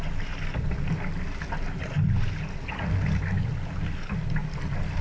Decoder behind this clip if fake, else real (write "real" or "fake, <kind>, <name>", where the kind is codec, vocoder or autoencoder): real